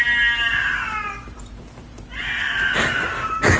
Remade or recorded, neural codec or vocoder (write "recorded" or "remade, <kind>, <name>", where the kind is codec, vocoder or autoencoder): recorded